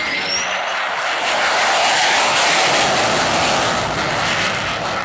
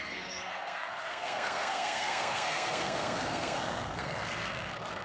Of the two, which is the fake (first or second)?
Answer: second